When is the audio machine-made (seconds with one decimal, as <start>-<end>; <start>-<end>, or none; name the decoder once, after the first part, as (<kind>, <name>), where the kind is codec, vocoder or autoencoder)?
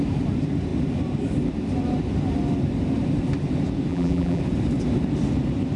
3.9-4.4 (vocoder, BigVGAN v2)